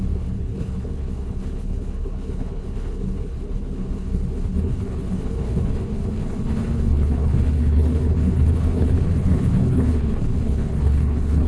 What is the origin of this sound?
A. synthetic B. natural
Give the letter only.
A